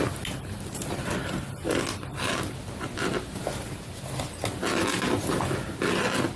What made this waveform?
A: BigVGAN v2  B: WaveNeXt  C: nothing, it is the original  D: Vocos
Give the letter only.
C